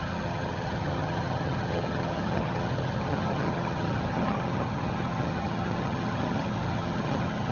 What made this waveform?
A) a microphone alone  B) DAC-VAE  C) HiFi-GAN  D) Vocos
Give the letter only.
C